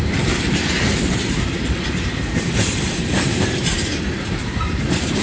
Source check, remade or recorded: remade